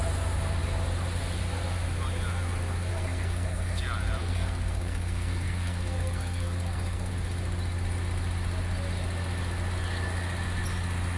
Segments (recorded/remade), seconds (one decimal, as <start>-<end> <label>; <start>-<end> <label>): 0.0-2.9 recorded; 2.9-3.8 remade; 3.8-4.2 recorded; 4.2-7.1 remade; 7.1-11.2 recorded